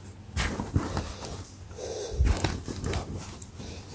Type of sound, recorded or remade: recorded